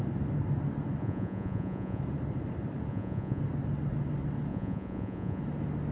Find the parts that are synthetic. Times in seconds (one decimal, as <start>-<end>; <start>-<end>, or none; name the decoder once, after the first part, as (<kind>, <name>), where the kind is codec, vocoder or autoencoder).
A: 1.0-2.0 (vocoder, Vocos); 2.9-3.4; 4.5-5.4